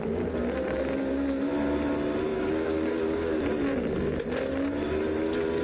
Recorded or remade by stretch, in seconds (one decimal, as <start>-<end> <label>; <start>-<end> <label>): 0.0-2.3 recorded; 2.3-3.4 remade; 3.4-5.6 recorded